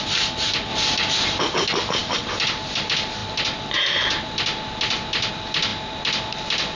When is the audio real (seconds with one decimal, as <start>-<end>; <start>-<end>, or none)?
0.0-0.7; 1.4-6.8